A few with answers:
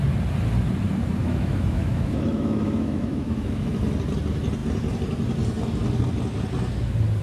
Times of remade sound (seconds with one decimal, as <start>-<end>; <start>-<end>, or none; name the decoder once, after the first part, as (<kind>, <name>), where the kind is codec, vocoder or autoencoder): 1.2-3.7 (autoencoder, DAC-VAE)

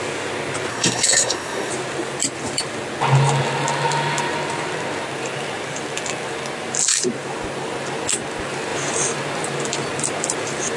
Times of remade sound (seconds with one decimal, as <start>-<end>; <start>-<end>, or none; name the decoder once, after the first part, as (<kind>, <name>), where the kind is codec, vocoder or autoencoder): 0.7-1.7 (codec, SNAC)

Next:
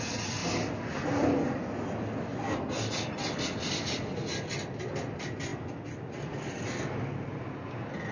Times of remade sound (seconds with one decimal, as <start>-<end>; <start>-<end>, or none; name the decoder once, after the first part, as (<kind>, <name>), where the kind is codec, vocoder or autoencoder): none

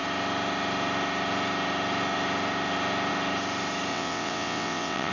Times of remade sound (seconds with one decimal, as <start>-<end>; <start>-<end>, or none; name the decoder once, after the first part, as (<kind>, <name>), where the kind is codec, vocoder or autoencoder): 3.9-5.1 (vocoder, WaveNeXt)

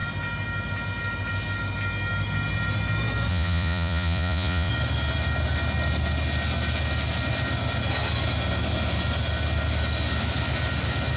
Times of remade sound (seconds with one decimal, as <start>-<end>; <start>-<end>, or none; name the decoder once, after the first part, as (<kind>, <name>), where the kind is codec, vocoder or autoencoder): 3.3-4.7 (vocoder, Vocos)